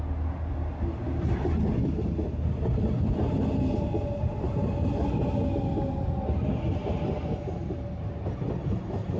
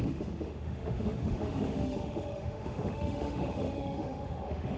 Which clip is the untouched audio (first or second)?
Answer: first